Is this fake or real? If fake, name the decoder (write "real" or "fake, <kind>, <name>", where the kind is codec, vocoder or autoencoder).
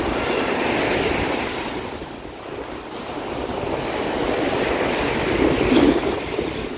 real